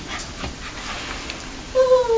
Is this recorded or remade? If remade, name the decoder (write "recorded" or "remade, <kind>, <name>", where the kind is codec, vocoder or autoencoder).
recorded